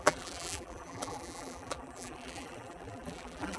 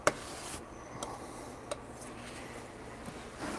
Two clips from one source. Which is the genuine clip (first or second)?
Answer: second